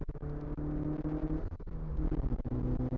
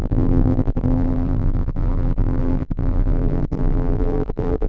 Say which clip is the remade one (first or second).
second